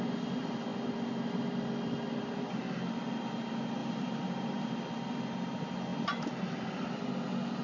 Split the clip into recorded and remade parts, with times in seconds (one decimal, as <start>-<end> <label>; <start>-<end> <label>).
0.0-3.8 recorded; 3.8-4.7 remade; 4.7-7.6 recorded

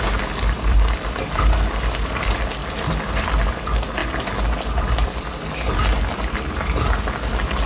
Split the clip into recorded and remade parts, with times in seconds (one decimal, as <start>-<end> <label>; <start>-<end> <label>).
0.0-7.7 recorded

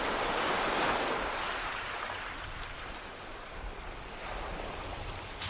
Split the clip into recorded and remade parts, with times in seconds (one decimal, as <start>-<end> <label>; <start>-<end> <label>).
0.0-5.5 recorded

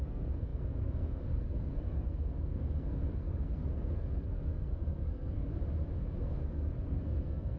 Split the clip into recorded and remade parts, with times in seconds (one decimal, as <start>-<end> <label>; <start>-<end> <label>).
0.0-5.5 remade; 5.5-6.2 recorded; 6.2-7.6 remade

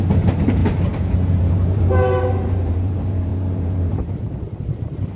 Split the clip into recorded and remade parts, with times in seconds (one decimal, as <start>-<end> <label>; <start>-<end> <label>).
0.0-0.6 remade; 0.6-1.4 recorded; 1.4-5.2 remade

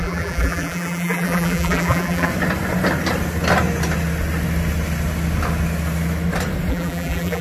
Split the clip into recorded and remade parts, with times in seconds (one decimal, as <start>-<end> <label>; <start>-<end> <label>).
0.0-2.3 remade; 2.3-6.7 recorded; 6.7-7.4 remade

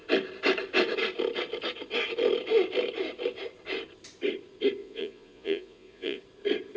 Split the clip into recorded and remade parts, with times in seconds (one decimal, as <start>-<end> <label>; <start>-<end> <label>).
0.0-4.8 recorded; 4.8-6.2 remade; 6.2-6.8 recorded

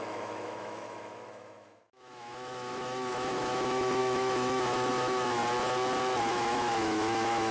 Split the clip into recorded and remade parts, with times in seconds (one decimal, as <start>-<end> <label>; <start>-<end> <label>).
0.0-5.4 remade; 5.4-6.2 recorded; 6.2-7.5 remade